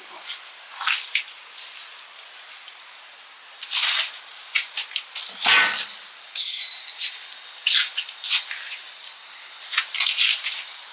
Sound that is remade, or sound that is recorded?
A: recorded